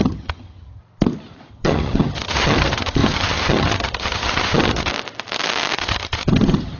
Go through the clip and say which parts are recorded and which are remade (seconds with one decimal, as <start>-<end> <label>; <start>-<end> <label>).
0.0-0.8 remade; 0.8-1.5 recorded; 1.5-4.9 remade; 4.9-5.8 recorded; 5.8-6.8 remade